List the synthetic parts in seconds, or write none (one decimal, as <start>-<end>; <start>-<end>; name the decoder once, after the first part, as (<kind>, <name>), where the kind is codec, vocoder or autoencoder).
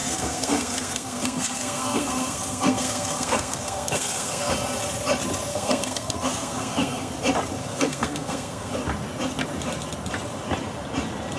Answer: 0.0-4.5 (codec, SNAC); 5.5-7.1; 7.6-8.7